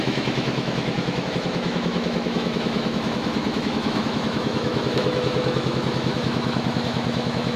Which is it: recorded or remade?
remade